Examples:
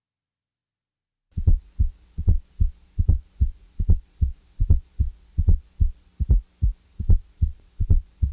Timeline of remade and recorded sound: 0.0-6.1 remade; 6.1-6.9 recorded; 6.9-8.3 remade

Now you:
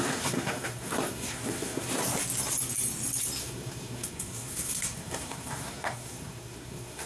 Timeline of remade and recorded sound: 0.0-2.0 remade; 2.0-3.4 recorded; 3.4-7.1 remade